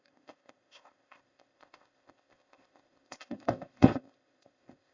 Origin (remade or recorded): remade